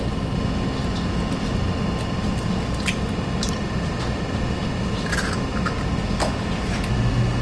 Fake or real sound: real